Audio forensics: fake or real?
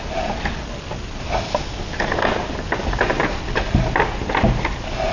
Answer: real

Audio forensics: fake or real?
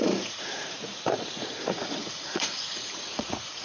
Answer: fake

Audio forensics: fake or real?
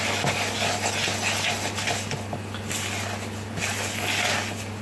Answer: real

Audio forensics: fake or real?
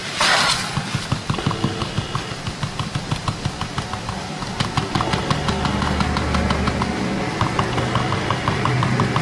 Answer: real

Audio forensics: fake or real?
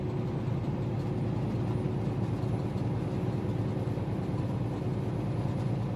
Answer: real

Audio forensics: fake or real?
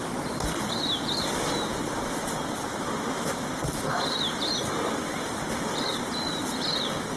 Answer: real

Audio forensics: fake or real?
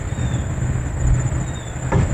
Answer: real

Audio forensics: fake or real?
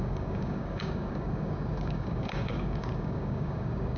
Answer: fake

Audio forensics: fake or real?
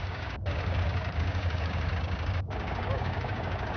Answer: fake